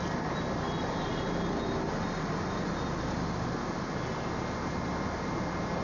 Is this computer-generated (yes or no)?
no